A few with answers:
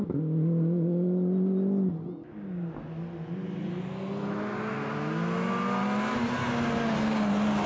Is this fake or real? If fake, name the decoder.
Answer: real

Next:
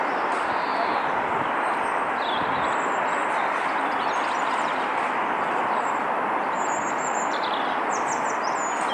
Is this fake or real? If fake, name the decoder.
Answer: real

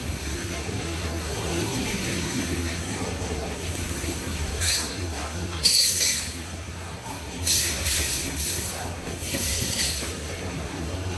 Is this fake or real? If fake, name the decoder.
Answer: fake, codec, SNAC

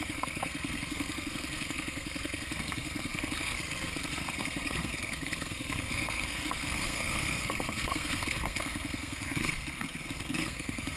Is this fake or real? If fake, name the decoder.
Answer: fake, codec, SNAC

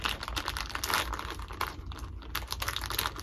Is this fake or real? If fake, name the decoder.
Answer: real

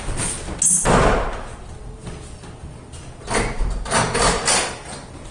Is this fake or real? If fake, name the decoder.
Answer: real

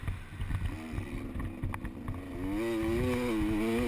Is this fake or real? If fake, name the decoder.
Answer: real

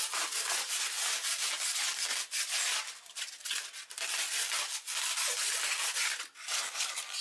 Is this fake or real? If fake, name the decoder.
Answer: real